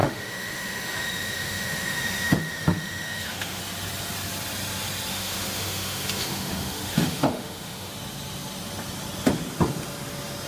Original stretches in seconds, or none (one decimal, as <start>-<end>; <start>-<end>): 3.6-5.1; 7.9-10.5